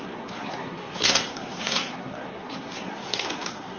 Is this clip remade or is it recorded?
remade